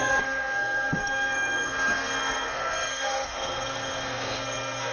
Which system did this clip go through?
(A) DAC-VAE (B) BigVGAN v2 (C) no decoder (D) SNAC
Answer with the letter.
D